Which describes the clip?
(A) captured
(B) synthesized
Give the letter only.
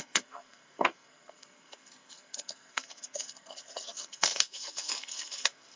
B